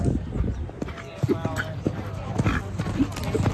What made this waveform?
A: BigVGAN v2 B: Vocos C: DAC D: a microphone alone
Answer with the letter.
D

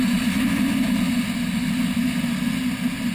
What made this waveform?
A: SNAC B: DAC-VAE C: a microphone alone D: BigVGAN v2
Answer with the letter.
C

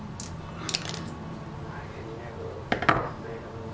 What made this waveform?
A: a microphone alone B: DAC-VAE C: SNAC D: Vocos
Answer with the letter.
A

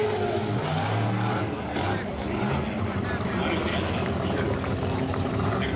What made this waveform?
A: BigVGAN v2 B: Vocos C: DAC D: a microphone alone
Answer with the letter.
D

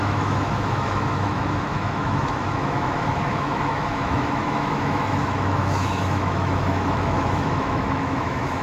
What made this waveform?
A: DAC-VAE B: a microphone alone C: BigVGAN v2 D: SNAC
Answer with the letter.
A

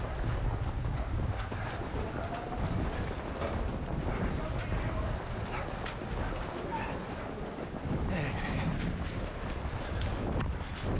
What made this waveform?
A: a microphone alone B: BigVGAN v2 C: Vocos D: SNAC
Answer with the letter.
A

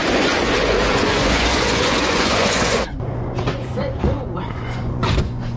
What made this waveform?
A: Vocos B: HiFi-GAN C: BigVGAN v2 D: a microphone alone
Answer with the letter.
A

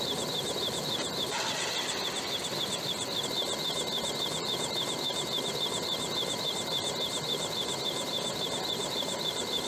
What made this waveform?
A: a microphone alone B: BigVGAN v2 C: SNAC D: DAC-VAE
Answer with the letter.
A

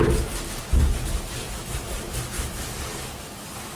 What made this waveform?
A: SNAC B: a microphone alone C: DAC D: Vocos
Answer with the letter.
B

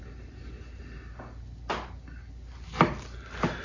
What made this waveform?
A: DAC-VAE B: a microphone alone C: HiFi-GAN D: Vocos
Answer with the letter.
B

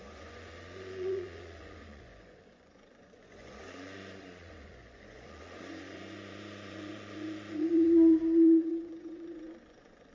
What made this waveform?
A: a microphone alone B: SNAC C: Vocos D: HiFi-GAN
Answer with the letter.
C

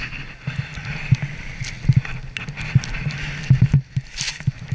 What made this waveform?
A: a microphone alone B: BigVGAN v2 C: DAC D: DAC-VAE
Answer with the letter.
A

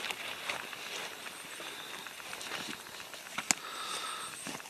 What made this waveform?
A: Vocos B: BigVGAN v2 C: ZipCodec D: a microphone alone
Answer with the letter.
D